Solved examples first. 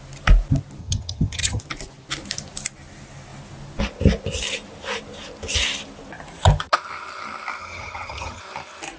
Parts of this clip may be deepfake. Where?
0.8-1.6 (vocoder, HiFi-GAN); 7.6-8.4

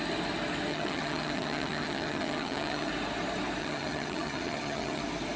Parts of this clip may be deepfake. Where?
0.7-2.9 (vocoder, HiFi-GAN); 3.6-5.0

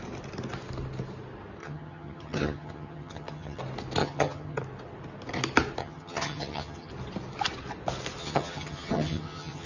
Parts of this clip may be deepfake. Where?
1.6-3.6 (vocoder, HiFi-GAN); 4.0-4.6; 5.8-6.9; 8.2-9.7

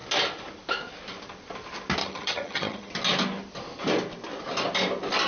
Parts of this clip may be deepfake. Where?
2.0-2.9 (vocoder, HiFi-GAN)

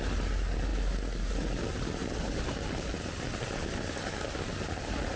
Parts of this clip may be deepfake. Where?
none